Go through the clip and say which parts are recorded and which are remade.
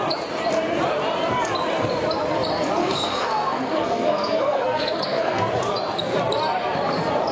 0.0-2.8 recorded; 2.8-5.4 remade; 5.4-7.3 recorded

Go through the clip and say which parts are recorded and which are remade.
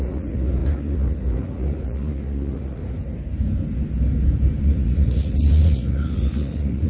0.0-2.8 remade; 2.8-4.6 recorded; 4.6-6.9 remade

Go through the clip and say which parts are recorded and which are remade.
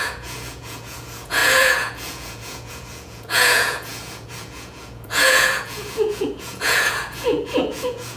0.0-8.2 remade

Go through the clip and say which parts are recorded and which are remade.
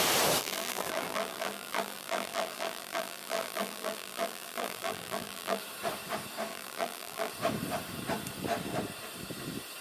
0.0-0.4 recorded; 0.4-5.6 remade; 5.6-6.5 recorded; 6.5-7.3 remade; 7.3-9.8 recorded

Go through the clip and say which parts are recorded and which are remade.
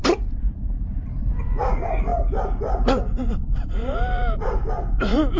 0.0-5.4 remade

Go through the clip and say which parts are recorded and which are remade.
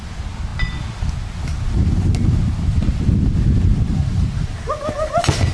0.0-5.5 recorded